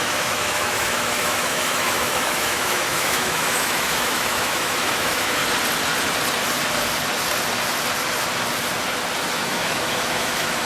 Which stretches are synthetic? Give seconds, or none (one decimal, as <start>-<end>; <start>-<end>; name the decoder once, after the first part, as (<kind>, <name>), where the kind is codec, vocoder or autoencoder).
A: 0.0-5.4 (autoencoder, DAC-VAE); 9.3-10.7